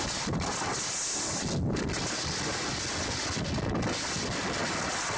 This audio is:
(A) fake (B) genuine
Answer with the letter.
B